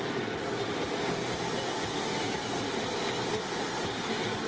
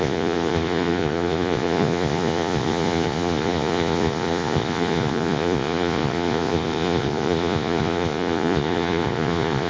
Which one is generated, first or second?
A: second